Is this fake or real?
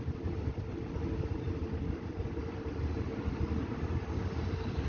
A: real